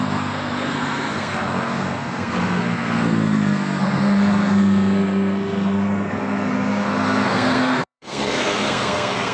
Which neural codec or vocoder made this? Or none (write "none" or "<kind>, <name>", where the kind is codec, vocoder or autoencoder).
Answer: codec, SNAC